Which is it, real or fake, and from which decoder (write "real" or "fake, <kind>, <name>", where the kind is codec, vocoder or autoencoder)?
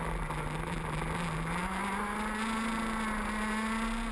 real